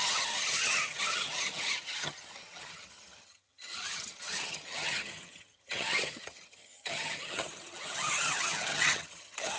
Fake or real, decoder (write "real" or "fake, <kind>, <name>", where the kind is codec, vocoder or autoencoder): fake, vocoder, HiFi-GAN